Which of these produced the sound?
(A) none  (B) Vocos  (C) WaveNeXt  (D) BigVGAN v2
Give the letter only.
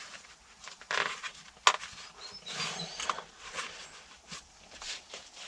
A